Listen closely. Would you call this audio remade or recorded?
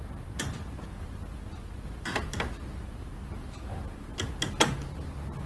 recorded